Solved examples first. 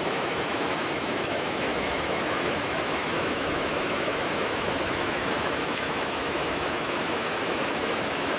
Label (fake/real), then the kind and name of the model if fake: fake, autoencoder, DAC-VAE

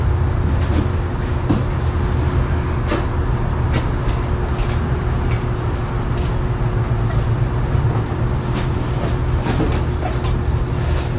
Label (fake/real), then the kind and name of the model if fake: real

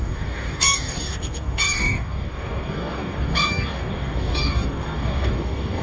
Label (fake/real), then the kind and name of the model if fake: fake, codec, DAC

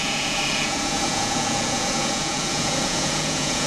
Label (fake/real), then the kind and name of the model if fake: fake, vocoder, Vocos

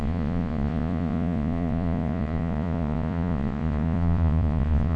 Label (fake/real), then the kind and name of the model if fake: fake, vocoder, Vocos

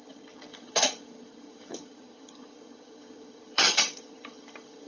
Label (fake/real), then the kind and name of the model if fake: fake, vocoder, HiFi-GAN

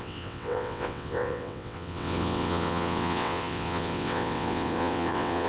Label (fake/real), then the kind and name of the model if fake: fake, vocoder, WaveNeXt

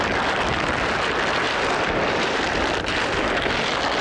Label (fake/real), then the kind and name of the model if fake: real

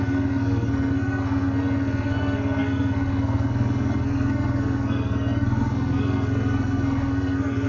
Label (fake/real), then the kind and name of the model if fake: fake, codec, SNAC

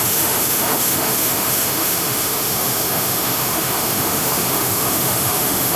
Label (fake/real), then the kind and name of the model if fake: fake, autoencoder, DAC-VAE